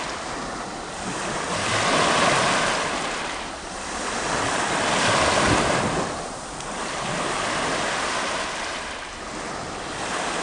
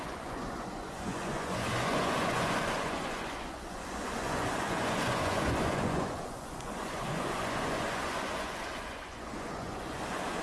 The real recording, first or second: first